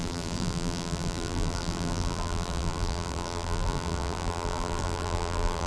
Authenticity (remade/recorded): remade